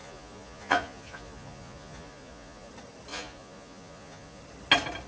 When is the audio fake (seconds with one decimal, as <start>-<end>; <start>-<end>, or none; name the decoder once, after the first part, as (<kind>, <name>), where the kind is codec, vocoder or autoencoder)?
0.0-2.7 (vocoder, Vocos); 3.1-4.4